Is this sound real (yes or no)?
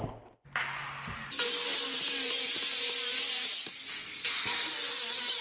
yes